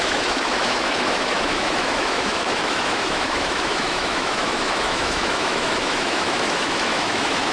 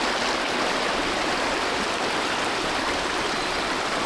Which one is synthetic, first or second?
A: first